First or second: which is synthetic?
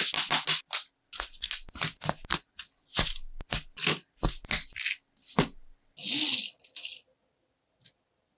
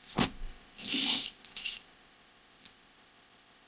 second